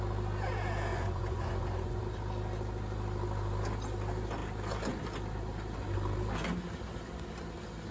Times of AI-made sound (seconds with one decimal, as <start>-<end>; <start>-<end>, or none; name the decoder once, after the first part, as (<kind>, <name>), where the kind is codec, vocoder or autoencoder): 0.9-2.0 (vocoder, Vocos)